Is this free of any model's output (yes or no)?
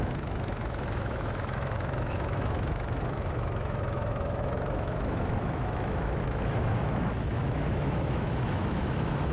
no